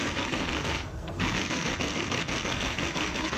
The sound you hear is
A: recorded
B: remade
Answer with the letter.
B